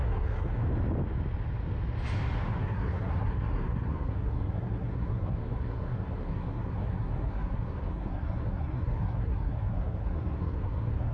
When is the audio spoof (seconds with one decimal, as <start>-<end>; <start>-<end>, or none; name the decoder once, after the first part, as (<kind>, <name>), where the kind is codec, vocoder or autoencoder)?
0.0-0.6 (codec, SNAC); 2.6-11.1